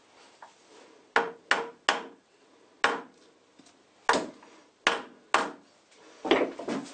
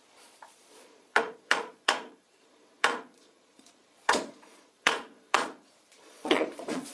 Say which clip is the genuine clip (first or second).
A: first